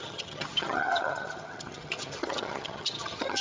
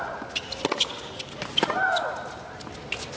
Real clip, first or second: second